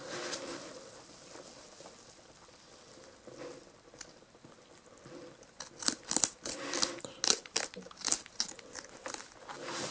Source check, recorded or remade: recorded